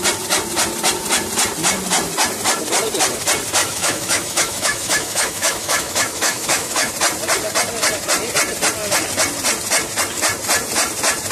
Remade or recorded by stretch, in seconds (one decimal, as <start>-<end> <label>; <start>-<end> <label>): 0.0-3.6 recorded; 3.6-6.9 remade; 6.9-11.3 recorded